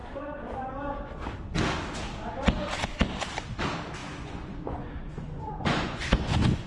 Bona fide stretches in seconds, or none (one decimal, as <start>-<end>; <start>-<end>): 0.0-4.0